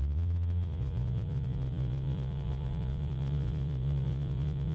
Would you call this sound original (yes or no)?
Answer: no